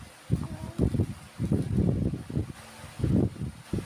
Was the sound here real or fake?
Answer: real